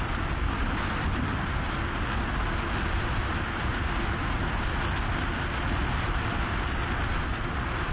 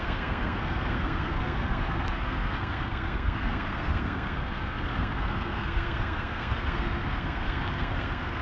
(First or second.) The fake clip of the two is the second